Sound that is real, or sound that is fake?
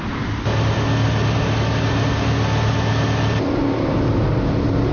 real